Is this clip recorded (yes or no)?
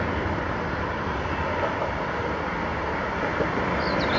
yes